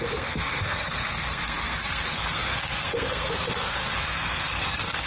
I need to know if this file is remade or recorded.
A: remade